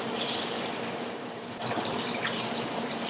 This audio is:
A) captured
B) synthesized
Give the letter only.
B